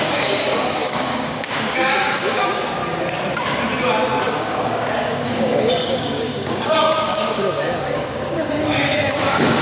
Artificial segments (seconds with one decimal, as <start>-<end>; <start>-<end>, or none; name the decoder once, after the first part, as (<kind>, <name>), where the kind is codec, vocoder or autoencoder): 0.0-2.8 (codec, DAC); 4.3-9.6